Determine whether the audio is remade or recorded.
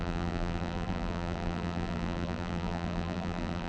remade